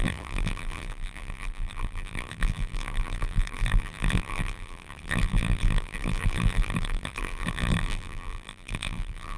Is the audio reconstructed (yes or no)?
yes